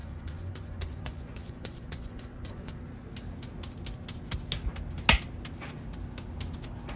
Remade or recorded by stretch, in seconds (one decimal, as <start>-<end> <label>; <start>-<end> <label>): 0.0-2.7 remade; 2.7-7.0 recorded